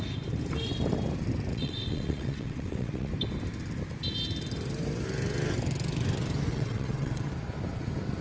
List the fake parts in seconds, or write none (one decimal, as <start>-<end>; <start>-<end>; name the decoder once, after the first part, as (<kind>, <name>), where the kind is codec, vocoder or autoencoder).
1.5-3.1 (vocoder, WaveNeXt); 6.5-7.3